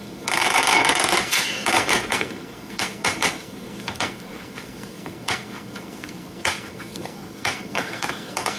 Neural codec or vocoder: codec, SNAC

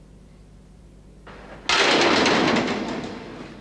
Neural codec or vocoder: none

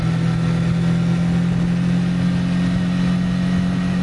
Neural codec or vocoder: none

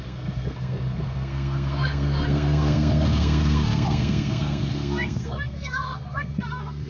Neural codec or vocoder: codec, SNAC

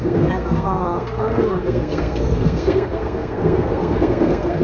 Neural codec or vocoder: codec, SNAC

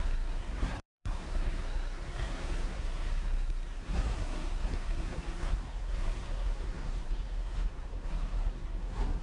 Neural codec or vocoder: codec, SNAC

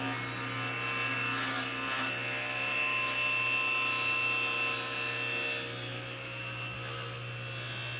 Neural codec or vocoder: none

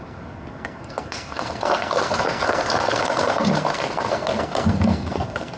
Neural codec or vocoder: codec, SNAC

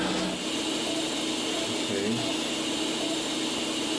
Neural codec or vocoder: none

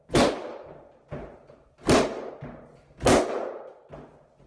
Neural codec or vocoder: none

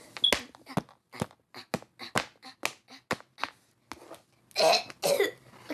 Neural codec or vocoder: none